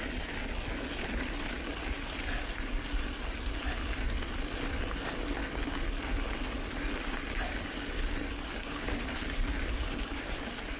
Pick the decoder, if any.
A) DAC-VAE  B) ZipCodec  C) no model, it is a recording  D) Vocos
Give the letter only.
C